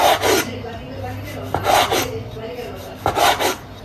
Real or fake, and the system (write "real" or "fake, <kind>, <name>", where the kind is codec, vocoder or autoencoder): real